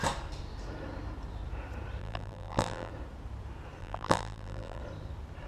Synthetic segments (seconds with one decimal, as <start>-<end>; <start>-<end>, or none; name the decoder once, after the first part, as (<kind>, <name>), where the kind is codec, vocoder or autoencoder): 2.0-2.9 (vocoder, BigVGAN v2); 3.8-4.8